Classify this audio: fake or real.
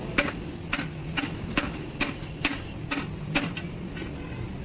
real